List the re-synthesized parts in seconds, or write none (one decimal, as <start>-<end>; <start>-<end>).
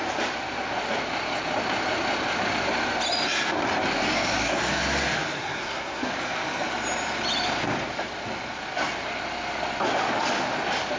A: 5.4-6.1